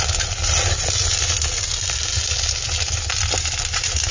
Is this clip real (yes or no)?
yes